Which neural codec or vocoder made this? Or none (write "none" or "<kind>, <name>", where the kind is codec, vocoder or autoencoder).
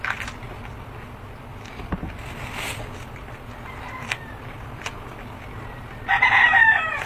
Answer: none